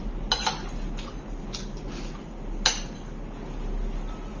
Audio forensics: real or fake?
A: real